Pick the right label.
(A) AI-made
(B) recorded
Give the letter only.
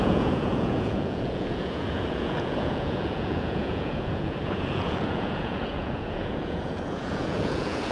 A